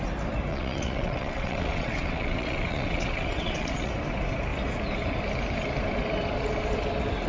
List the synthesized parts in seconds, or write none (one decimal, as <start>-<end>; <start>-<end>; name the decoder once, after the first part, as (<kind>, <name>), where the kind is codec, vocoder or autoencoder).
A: 0.5-3.9 (vocoder, WaveNeXt)